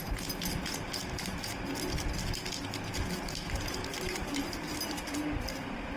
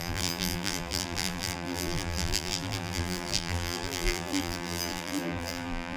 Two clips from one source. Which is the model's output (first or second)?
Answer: second